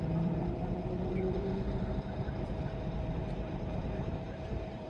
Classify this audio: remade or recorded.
remade